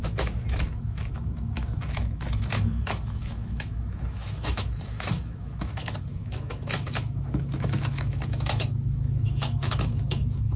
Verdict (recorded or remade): remade